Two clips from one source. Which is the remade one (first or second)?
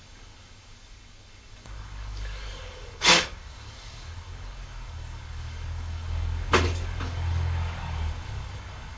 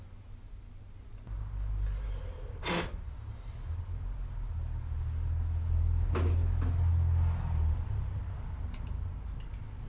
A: first